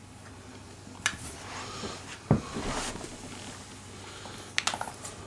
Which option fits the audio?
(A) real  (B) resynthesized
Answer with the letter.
A